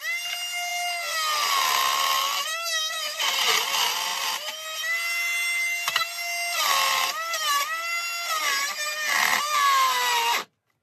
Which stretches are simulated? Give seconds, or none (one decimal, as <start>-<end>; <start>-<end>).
2.5-3.2